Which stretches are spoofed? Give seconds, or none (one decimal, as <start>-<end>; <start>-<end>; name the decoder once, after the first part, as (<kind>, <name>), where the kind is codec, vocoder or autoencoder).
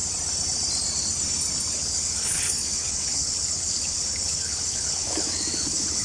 1.7-6.0 (codec, HILCodec)